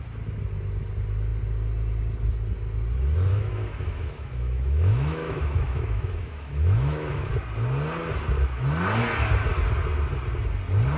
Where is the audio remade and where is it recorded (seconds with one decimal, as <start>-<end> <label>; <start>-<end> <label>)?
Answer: 0.0-3.3 recorded; 3.3-7.3 remade; 7.3-11.0 recorded